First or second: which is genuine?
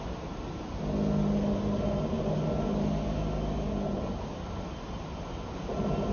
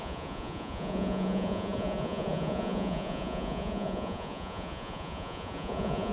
first